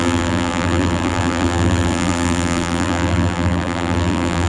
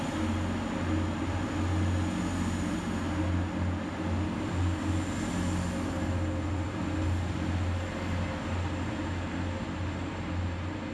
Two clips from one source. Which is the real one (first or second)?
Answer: second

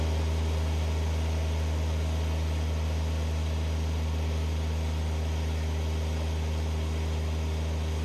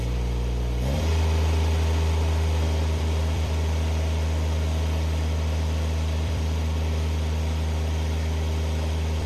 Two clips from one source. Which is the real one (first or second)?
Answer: first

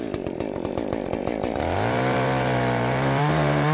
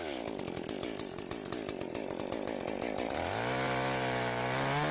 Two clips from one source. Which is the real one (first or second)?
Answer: second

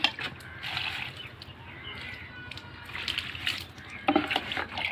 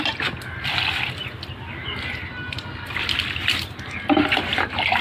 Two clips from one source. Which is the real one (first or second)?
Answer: first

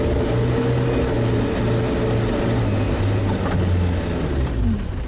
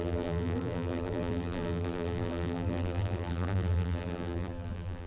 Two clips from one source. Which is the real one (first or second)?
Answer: first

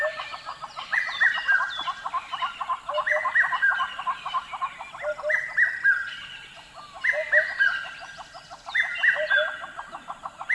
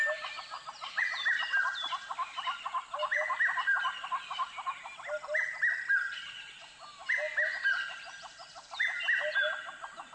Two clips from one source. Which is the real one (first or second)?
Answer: second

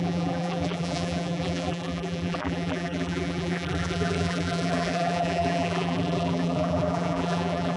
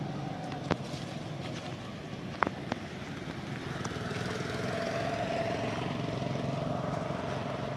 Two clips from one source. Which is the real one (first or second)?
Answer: second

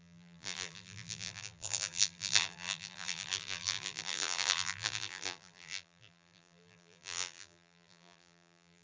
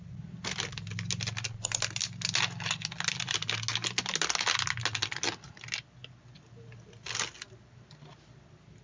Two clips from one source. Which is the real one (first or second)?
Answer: second